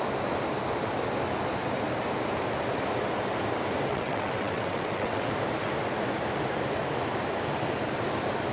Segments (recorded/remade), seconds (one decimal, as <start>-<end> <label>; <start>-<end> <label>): 0.0-3.9 recorded; 3.9-5.3 remade; 5.3-8.5 recorded